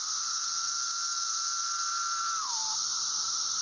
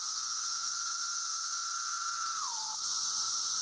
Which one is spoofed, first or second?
second